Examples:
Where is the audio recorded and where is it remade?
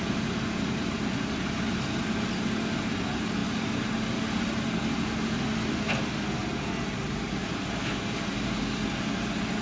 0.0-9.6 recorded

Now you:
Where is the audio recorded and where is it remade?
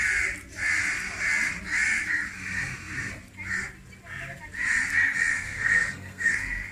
0.0-5.3 recorded; 5.3-6.7 remade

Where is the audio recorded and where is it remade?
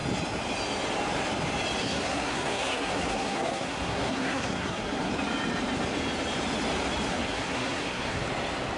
0.0-1.8 recorded; 1.8-5.1 remade; 5.1-7.1 recorded; 7.1-8.2 remade; 8.2-8.8 recorded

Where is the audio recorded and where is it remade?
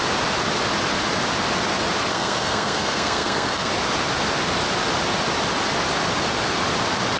0.0-2.1 recorded; 2.1-3.7 remade; 3.7-7.2 recorded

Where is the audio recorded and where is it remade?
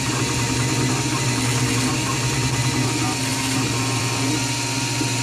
0.0-5.2 recorded